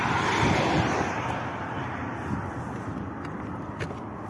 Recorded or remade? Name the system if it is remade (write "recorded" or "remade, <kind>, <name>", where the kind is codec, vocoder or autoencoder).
recorded